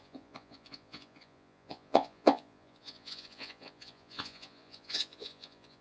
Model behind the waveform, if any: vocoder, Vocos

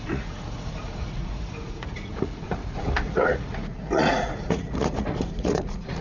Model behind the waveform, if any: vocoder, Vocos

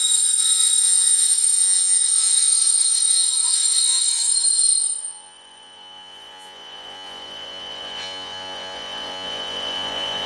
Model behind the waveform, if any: vocoder, Vocos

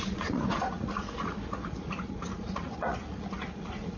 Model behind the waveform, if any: vocoder, Vocos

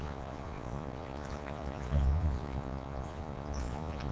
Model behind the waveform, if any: vocoder, Vocos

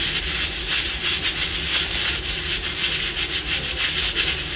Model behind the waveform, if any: none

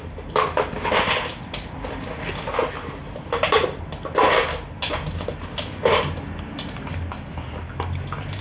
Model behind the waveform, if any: none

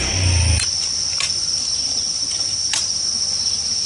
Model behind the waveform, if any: none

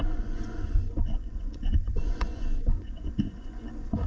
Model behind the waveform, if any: vocoder, Vocos